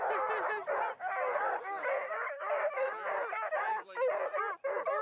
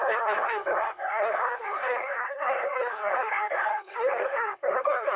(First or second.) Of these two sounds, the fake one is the second